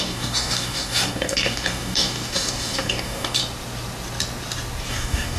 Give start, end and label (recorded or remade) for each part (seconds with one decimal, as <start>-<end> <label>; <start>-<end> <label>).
0.0-3.4 remade; 3.4-4.9 recorded; 4.9-5.4 remade